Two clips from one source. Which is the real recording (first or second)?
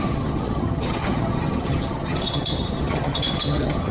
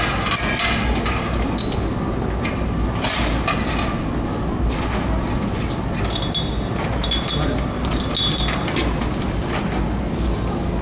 second